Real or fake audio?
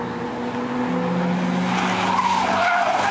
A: real